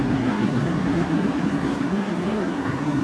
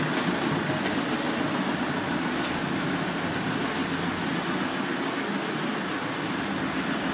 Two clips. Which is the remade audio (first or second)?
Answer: first